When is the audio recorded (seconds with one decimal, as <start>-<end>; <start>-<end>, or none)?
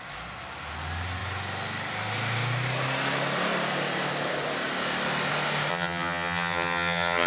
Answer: 0.0-5.7